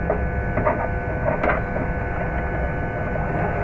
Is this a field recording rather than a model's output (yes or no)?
yes